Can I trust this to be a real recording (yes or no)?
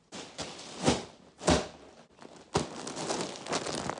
yes